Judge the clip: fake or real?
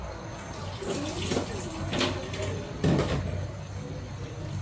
real